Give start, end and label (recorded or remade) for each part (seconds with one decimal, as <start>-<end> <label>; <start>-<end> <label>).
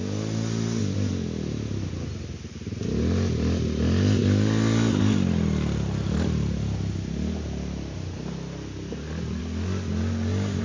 0.0-10.6 recorded